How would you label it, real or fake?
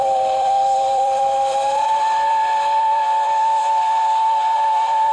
fake